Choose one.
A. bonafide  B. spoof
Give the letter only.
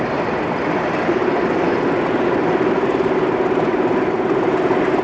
A